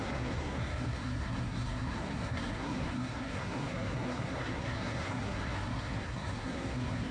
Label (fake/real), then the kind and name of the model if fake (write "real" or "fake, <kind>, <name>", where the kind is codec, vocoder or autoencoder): fake, codec, SNAC